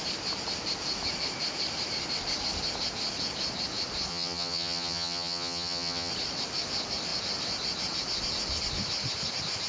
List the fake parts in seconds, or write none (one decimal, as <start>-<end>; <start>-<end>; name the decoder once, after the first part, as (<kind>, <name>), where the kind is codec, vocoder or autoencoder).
4.1-6.1 (vocoder, HiFi-GAN)